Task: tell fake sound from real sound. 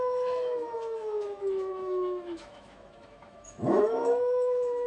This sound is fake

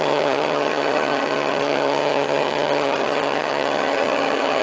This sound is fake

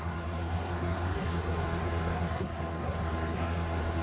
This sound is fake